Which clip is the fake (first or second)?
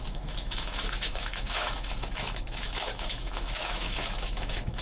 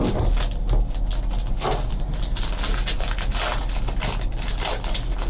first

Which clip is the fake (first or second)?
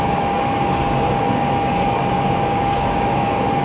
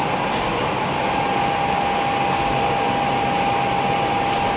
first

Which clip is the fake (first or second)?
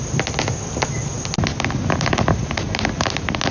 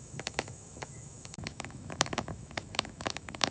second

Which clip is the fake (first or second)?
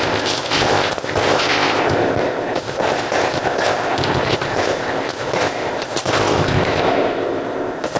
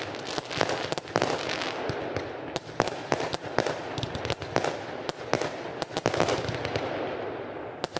first